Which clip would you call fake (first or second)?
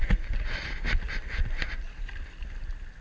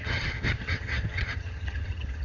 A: second